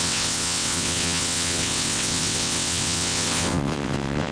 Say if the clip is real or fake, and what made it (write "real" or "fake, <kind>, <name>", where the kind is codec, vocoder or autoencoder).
fake, vocoder, WaveNeXt